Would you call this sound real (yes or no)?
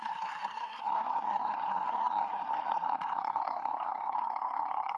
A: no